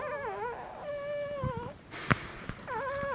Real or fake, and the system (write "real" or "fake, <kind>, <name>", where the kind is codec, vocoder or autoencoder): real